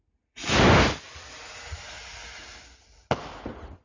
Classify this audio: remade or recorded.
recorded